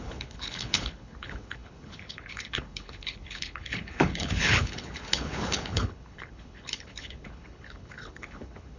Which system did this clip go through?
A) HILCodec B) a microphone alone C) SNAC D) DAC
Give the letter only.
A